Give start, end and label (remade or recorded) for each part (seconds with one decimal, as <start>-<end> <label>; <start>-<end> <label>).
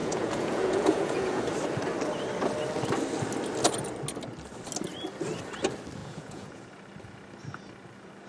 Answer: 0.0-1.4 remade; 1.4-6.0 recorded; 6.0-6.7 remade; 6.7-8.3 recorded